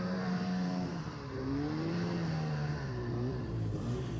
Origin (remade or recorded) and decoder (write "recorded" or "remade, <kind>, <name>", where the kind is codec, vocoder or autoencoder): remade, vocoder, BigVGAN v2